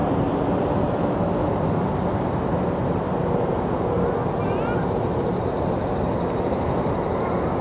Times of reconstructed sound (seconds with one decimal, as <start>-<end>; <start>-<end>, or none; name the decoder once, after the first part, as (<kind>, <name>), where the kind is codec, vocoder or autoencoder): none